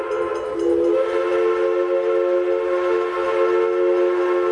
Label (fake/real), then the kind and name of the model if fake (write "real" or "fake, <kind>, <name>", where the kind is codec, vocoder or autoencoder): real